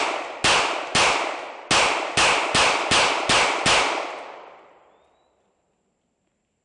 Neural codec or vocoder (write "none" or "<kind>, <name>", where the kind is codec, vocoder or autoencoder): none